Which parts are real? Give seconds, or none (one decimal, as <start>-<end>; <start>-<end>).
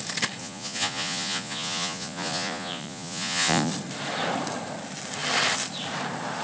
0.0-0.4; 3.7-6.4